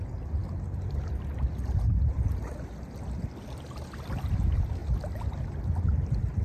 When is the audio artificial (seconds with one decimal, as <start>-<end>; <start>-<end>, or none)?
none